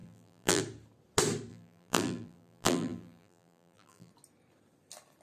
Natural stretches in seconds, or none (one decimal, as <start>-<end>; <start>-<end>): 0.6-1.5; 4.1-5.2